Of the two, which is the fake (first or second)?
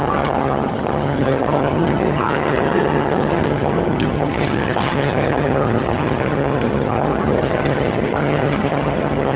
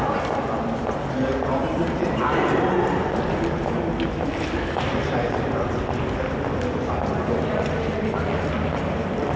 first